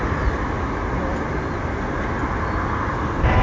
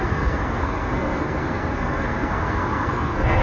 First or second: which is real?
first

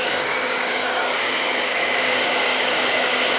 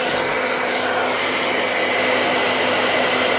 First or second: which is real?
second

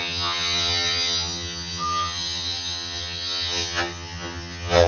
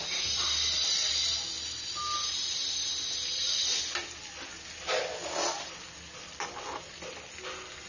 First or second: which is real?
second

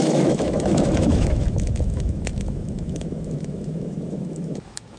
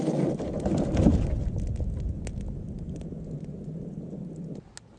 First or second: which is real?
second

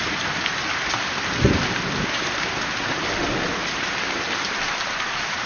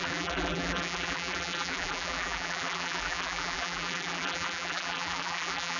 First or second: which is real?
first